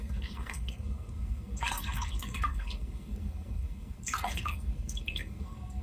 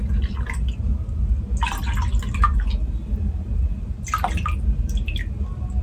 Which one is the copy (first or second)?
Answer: first